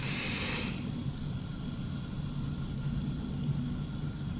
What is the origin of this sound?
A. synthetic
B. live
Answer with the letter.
B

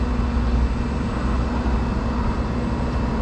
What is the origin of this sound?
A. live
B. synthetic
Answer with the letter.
A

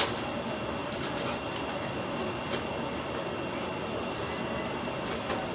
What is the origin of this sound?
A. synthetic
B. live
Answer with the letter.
B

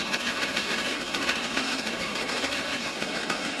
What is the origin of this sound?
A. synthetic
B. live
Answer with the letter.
A